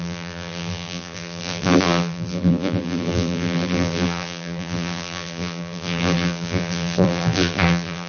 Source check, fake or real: fake